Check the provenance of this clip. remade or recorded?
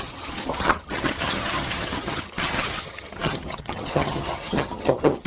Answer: remade